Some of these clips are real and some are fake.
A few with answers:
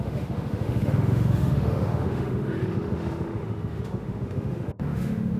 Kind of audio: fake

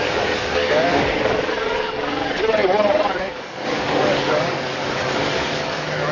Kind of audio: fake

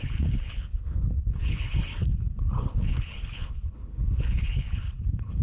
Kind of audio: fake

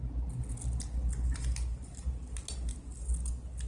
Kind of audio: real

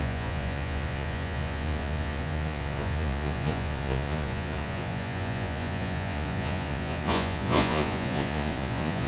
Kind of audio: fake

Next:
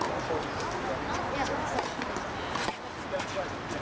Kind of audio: real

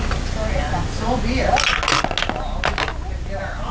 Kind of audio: real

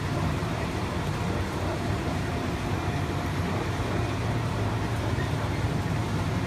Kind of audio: fake